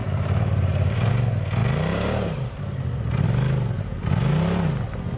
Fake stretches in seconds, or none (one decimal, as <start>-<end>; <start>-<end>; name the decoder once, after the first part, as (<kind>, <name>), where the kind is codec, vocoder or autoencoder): 0.0-1.1 (vocoder, BigVGAN v2)